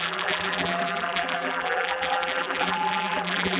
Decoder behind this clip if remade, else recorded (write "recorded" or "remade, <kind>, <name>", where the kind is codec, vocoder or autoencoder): remade, vocoder, BigVGAN v2